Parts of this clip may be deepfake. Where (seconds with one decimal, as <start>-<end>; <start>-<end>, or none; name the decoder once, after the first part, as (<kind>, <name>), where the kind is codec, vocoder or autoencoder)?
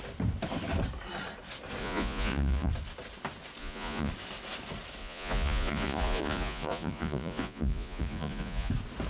1.8-2.7 (vocoder, Vocos); 3.6-4.1; 5.0-8.7